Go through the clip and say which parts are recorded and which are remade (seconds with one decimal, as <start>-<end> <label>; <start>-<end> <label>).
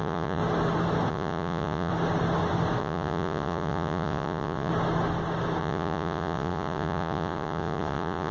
0.0-0.4 remade; 0.4-1.1 recorded; 1.1-1.9 remade; 1.9-2.8 recorded; 2.8-4.7 remade; 4.7-5.6 recorded; 5.6-8.3 remade